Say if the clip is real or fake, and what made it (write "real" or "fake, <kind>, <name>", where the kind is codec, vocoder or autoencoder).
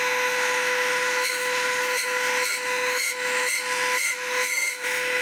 fake, autoencoder, DAC-VAE